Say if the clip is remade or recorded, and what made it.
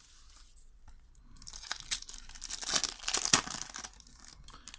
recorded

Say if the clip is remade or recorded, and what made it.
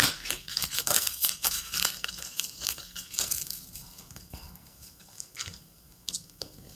remade, codec, SNAC